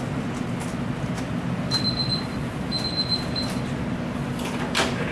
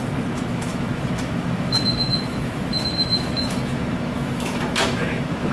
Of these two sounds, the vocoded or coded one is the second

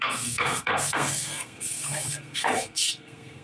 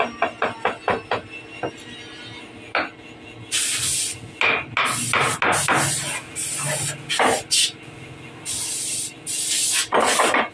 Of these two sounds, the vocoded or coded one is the first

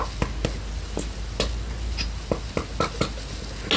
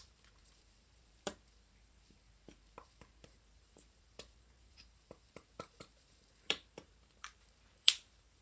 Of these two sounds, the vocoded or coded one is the second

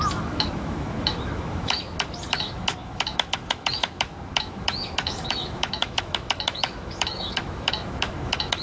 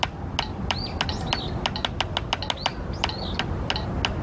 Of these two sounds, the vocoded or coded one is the first